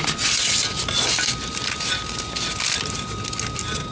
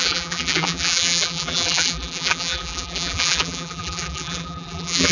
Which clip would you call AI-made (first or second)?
second